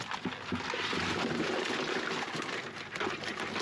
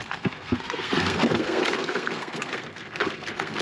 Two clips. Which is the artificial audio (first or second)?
second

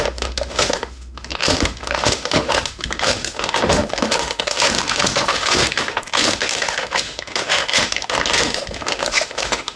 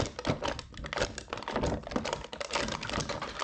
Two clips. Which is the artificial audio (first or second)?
first